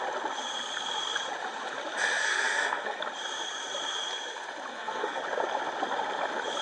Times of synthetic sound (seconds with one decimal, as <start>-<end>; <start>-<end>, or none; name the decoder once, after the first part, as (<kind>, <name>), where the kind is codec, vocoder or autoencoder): 2.2-3.0 (codec, SNAC); 4.7-5.2